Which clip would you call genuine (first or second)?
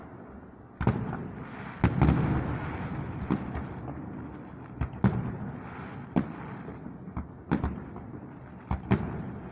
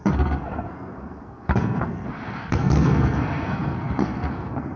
first